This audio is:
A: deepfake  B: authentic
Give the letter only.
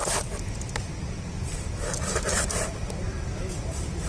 B